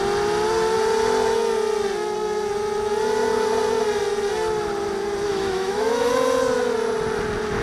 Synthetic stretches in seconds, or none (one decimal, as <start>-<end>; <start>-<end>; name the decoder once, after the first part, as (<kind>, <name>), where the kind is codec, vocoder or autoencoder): 5.3-6.1 (autoencoder, DAC-VAE)